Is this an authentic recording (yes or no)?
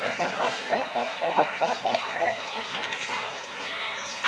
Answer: no